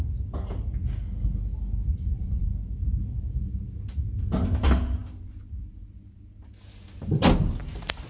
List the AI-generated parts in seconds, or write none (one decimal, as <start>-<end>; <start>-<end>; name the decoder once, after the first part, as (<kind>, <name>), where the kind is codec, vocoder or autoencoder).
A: 1.9-2.5 (vocoder, Vocos)